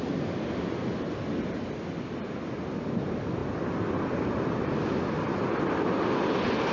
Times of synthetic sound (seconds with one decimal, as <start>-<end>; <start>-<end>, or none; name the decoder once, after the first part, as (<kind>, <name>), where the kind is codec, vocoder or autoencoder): none